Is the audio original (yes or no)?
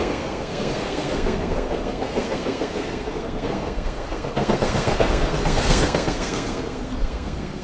no